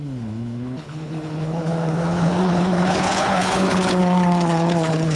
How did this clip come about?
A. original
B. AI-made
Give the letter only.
B